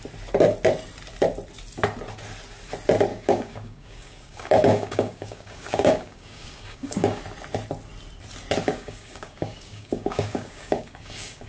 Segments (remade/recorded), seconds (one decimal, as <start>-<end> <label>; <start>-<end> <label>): 0.0-3.1 recorded; 3.1-7.2 remade; 7.2-8.7 recorded; 8.7-11.5 remade